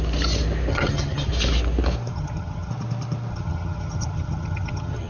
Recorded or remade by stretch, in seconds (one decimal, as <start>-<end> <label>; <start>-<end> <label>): 0.0-0.7 recorded; 0.7-1.3 remade; 1.3-2.1 recorded; 2.1-2.7 remade; 2.7-3.3 recorded; 3.3-5.1 remade